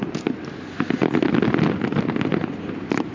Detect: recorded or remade recorded